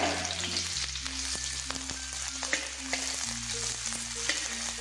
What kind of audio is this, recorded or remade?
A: remade